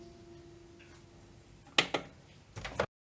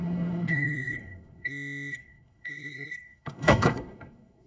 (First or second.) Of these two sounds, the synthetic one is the second